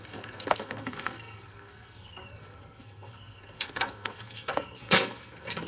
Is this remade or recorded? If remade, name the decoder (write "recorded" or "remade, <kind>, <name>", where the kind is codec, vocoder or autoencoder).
remade, codec, SNAC